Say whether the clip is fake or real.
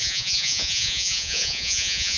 fake